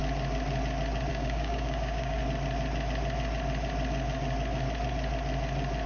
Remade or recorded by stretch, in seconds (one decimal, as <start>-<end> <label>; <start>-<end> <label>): 0.0-1.1 recorded; 1.1-2.2 remade; 2.2-5.9 recorded